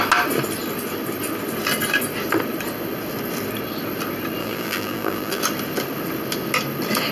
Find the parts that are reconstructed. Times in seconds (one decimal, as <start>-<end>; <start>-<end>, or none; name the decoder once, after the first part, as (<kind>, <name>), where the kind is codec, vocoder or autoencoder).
4.4-5.4 (vocoder, BigVGAN v2)